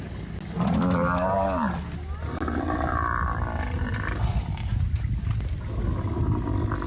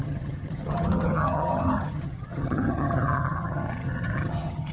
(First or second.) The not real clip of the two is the second